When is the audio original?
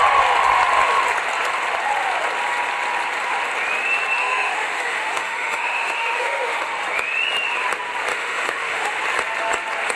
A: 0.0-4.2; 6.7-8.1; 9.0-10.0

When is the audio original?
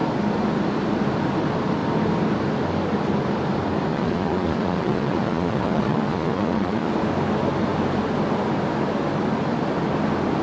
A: 0.0-3.9; 6.9-10.4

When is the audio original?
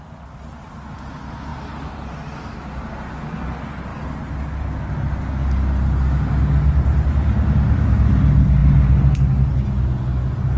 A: 0.0-10.6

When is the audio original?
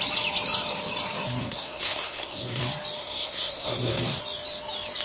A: 0.0-1.4; 2.6-3.0; 4.2-5.0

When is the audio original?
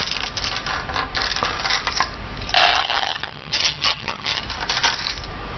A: 0.0-2.7; 4.4-5.6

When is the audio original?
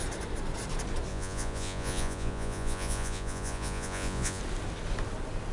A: 0.0-1.1; 4.4-5.5